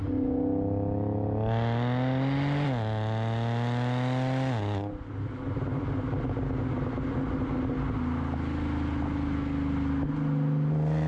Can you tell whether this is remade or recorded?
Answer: recorded